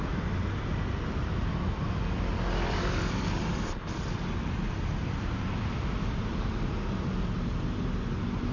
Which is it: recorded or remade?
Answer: recorded